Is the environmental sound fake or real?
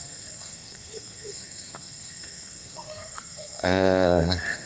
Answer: fake